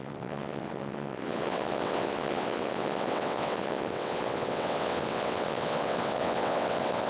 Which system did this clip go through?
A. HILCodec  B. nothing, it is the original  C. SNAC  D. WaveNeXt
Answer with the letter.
D